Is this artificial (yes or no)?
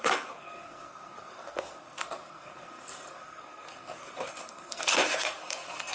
yes